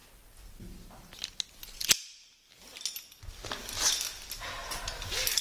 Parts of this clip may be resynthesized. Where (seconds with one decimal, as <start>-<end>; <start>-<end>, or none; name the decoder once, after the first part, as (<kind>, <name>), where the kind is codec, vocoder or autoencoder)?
none

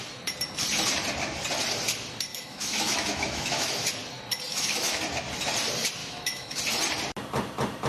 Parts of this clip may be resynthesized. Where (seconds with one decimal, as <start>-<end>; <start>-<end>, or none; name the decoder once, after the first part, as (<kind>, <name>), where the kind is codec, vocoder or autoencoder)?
2.3-3.7 (autoencoder, DAC-VAE); 4.5-5.0; 6.0-6.6

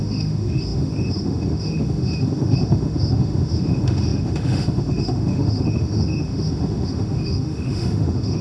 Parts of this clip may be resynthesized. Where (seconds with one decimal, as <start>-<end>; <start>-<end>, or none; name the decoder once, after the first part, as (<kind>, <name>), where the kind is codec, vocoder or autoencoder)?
0.0-8.4 (autoencoder, DAC-VAE)

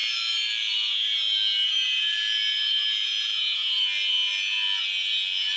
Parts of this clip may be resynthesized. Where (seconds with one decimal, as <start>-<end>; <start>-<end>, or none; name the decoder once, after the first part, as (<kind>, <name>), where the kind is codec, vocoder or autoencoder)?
none

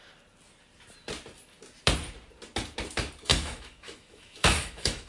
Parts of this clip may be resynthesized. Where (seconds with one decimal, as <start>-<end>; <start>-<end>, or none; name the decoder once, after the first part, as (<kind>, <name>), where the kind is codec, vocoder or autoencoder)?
3.3-5.1 (autoencoder, DAC-VAE)